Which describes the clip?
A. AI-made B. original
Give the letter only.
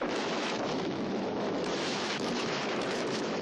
A